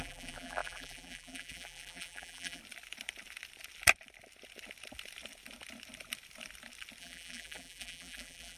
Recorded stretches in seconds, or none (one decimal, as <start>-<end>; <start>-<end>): 2.6-7.0